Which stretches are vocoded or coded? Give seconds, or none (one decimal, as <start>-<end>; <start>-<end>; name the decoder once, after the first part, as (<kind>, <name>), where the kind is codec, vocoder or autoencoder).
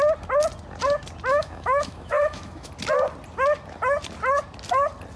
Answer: 1.3-2.7 (autoencoder, DAC-VAE)